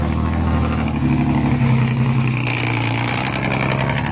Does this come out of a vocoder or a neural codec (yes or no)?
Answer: no